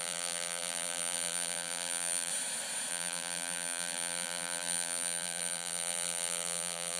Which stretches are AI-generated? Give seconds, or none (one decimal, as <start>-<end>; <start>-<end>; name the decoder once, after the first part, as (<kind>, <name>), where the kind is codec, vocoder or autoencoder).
0.0-2.3 (vocoder, BigVGAN v2); 2.9-7.0